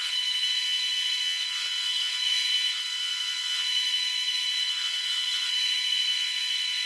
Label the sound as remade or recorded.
remade